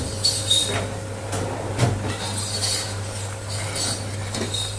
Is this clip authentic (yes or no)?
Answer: yes